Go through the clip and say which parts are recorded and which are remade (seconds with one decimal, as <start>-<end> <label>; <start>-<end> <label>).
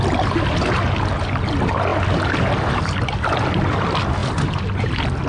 0.0-5.3 recorded